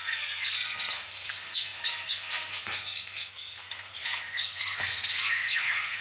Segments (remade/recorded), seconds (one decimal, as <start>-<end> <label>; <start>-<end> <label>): 0.0-6.0 remade